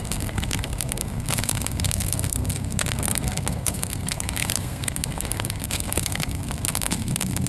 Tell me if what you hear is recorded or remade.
remade